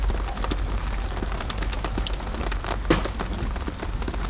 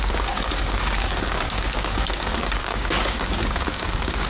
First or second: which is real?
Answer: first